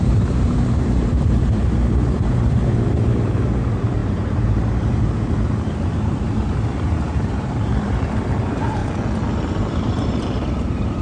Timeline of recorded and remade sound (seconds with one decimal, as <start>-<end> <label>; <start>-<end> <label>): 0.0-8.8 remade; 8.8-9.5 recorded; 9.5-11.0 remade